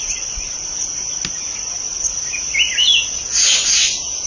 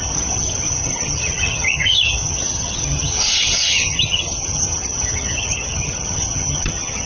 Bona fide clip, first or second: first